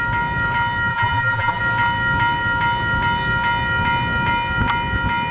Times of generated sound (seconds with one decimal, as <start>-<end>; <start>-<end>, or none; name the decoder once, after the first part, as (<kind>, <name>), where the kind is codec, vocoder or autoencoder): 0.9-1.6 (vocoder, BigVGAN v2)